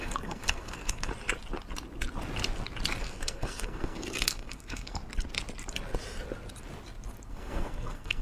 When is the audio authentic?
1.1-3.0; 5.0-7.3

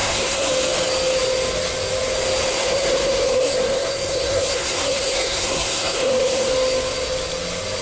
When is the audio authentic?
0.5-2.5; 6.5-7.8